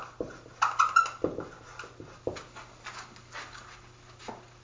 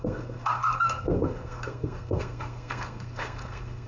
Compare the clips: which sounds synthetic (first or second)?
second